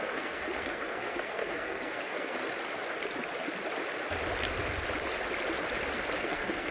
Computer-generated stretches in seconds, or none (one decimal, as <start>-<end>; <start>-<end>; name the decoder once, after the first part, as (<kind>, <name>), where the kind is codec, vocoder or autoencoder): 0.0-2.4 (codec, SNAC); 6.2-6.7